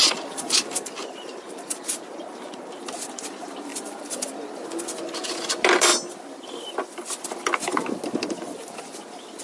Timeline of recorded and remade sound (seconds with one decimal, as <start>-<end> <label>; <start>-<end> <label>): 0.0-2.9 remade; 2.9-3.7 recorded; 3.7-4.3 remade; 4.3-9.4 recorded